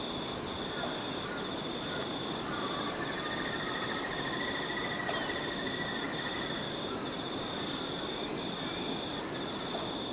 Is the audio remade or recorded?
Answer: recorded